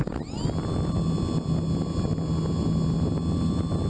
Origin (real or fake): real